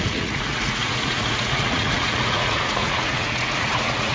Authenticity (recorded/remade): remade